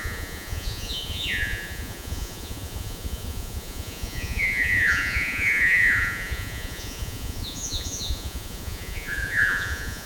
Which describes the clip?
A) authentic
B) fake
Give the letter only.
B